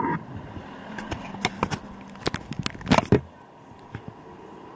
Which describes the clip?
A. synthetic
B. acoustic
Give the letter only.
B